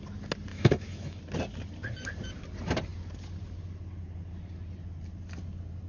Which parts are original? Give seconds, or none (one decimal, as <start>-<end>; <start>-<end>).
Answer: 0.0-0.5; 1.2-5.9